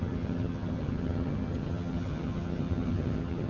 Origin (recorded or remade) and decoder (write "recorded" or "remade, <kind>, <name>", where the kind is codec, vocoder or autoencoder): remade, vocoder, HiFi-GAN